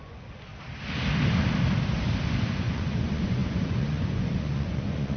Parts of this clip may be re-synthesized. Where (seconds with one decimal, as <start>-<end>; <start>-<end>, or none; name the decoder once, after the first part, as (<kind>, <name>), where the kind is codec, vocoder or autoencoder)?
0.0-0.5 (vocoder, Vocos); 2.5-5.2